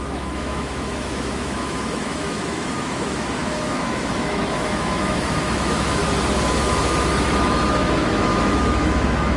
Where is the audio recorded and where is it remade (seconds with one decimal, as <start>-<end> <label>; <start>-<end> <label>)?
0.0-6.0 remade; 6.0-6.5 recorded; 6.5-9.4 remade

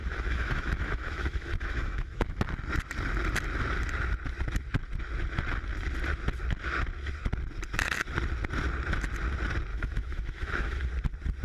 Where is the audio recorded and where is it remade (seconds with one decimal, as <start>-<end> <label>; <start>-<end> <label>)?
0.0-2.4 remade; 2.4-9.7 recorded; 9.7-10.9 remade; 10.9-11.4 recorded

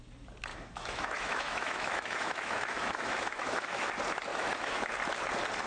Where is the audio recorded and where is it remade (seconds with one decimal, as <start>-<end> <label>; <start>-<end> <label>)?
0.0-0.5 recorded; 0.5-3.9 remade; 3.9-4.3 recorded; 4.3-4.9 remade; 4.9-5.7 recorded